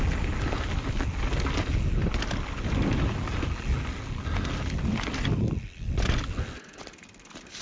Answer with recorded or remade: recorded